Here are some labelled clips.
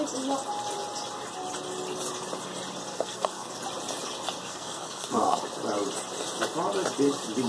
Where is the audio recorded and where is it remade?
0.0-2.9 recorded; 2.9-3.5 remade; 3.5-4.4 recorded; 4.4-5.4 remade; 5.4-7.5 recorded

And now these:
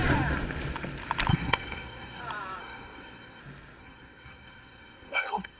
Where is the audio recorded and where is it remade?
0.0-1.3 recorded; 1.3-2.2 remade; 2.2-2.6 recorded; 2.6-3.4 remade; 3.4-3.8 recorded; 3.8-5.6 remade